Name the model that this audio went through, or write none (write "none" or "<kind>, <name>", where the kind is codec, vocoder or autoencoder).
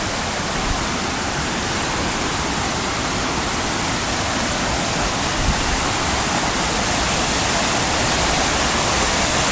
none